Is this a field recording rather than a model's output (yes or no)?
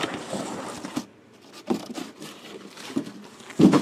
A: yes